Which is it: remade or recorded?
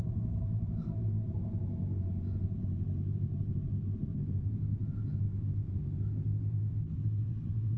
remade